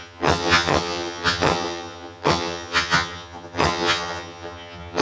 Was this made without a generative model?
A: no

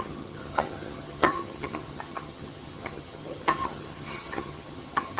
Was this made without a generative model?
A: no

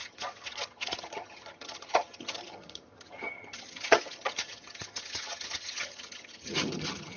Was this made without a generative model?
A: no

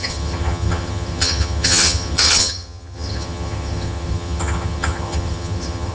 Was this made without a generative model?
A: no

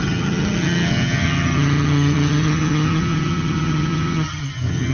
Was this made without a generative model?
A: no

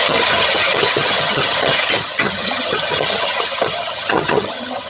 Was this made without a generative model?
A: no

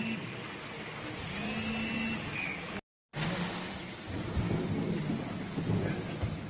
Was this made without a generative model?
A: yes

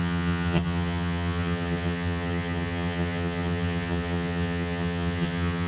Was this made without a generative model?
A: no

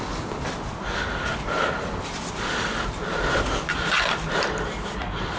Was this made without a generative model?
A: yes